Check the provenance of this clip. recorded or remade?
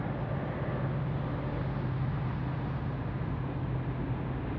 recorded